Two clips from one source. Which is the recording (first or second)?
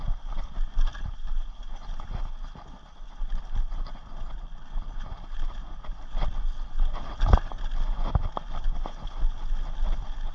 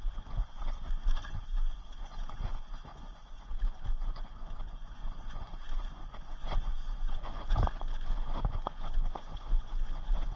first